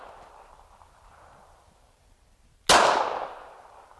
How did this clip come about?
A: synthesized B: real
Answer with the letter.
B